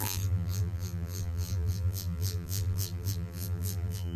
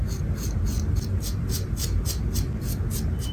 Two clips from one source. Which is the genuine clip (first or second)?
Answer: second